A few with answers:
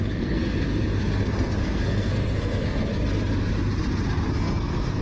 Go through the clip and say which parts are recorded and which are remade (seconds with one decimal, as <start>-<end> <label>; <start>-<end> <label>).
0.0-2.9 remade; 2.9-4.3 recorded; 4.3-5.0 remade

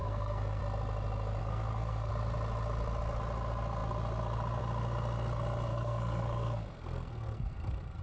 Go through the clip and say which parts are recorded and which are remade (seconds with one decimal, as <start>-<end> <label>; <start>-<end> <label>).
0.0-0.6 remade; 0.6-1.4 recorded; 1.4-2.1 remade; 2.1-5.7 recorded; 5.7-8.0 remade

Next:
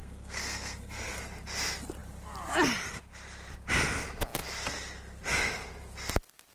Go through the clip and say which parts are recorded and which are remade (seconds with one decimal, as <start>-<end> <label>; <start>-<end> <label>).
0.0-1.2 remade; 1.2-6.5 recorded